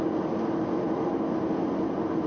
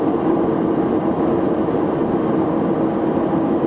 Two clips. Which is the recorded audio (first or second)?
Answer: first